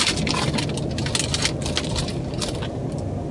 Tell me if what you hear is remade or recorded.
recorded